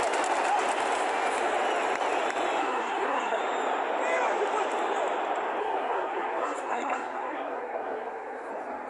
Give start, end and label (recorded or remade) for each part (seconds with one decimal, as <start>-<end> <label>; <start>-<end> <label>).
0.0-2.6 recorded; 2.6-3.4 remade; 3.4-5.6 recorded; 5.6-8.5 remade; 8.5-8.9 recorded